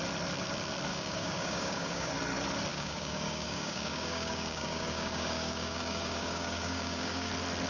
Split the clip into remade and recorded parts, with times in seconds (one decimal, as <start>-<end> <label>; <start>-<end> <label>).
0.0-0.9 recorded; 0.9-2.1 remade; 2.1-2.7 recorded; 2.7-7.3 remade; 7.3-7.7 recorded